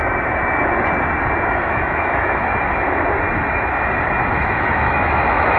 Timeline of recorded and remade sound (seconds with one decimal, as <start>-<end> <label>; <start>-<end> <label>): 0.0-1.5 recorded; 1.5-2.5 remade; 2.5-4.3 recorded; 4.3-5.6 remade